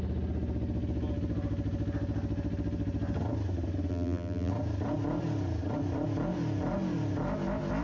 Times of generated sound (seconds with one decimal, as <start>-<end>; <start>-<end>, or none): 3.9-4.5